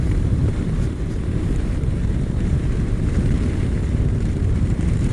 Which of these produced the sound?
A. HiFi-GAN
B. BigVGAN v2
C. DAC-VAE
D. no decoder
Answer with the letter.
B